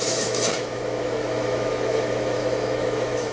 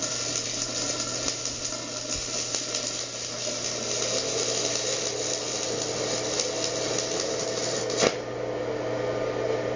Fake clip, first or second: first